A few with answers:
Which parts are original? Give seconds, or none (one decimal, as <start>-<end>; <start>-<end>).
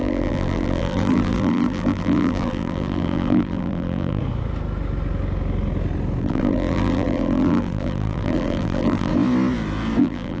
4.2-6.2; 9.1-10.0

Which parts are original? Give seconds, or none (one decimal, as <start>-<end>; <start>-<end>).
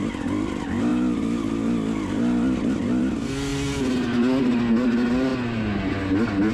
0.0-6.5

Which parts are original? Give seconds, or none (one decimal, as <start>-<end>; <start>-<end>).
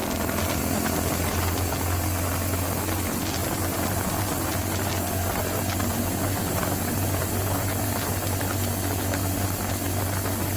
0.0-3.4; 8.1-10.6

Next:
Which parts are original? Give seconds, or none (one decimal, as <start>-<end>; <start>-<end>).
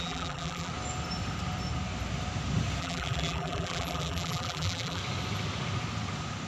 0.7-2.8; 5.0-6.5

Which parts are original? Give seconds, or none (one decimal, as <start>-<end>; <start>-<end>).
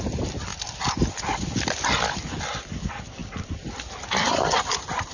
0.0-3.2; 3.8-5.1